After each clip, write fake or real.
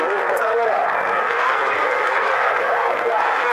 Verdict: fake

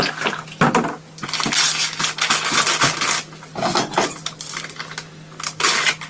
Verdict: real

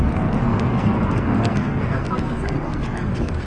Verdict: fake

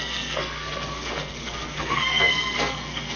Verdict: fake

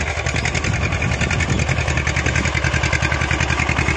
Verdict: real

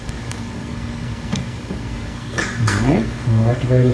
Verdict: fake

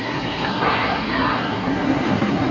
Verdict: fake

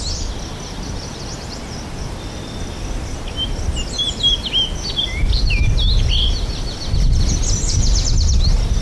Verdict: real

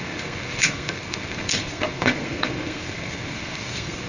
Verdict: fake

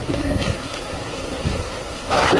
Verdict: fake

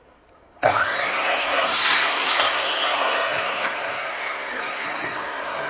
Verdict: fake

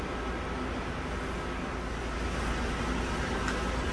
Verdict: real